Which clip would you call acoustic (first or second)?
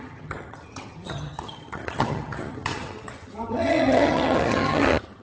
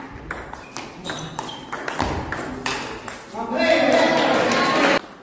second